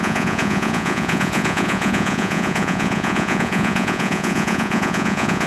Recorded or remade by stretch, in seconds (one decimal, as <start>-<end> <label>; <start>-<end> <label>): 0.0-5.5 remade